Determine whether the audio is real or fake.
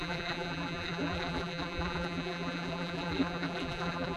fake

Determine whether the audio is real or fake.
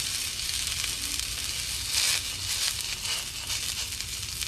real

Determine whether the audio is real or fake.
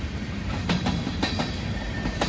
fake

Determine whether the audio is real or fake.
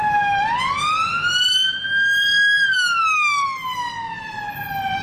real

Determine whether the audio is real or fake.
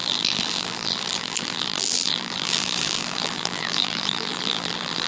fake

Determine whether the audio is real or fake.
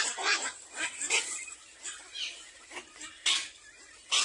real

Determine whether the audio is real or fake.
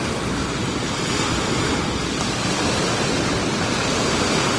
real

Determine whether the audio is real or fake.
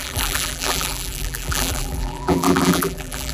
fake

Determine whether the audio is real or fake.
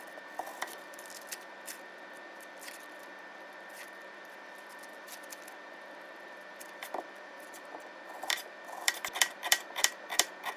fake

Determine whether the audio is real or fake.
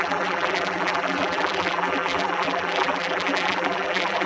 fake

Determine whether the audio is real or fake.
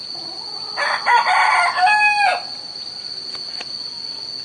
real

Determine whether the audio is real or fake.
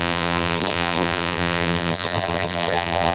fake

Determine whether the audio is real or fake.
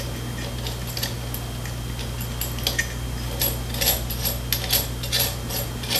real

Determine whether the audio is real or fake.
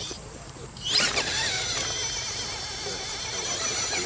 fake